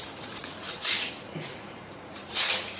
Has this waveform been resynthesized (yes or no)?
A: yes